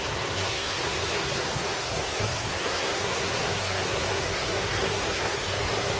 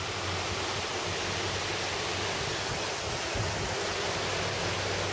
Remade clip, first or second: first